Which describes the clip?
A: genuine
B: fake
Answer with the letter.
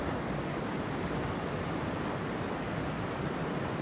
A